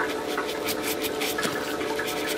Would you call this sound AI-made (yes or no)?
no